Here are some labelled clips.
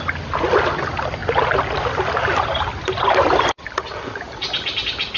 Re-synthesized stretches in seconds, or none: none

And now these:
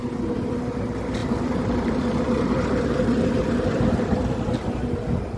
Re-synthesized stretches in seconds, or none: 1.2-4.4

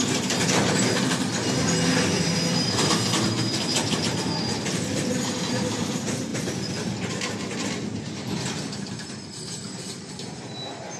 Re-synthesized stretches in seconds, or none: none